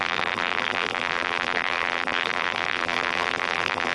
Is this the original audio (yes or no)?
no